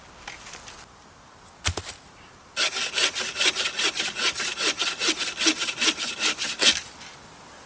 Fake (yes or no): no